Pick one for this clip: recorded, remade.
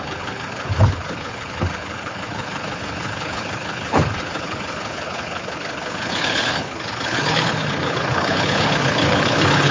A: remade